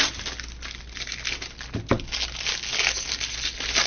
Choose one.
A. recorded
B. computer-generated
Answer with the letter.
A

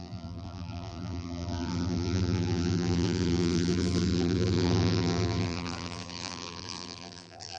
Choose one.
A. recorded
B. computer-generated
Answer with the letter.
B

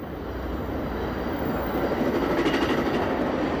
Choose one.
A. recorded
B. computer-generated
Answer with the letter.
A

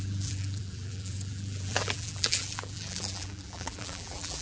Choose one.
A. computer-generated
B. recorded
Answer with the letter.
A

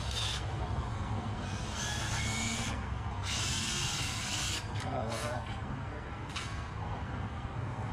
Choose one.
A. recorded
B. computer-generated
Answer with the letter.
B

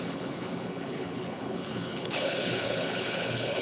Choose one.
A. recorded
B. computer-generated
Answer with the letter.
B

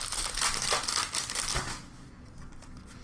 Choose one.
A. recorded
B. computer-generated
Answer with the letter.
A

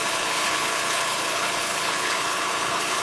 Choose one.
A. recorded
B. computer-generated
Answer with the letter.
B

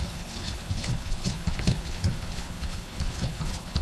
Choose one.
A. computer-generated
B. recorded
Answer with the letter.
A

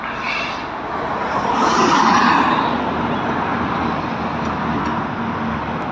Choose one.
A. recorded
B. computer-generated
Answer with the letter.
A